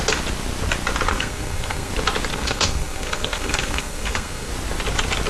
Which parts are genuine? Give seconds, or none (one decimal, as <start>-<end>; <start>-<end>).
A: 0.0-1.1; 1.9-2.3; 4.5-5.3